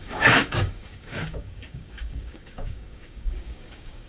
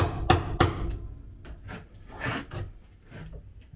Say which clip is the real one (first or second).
second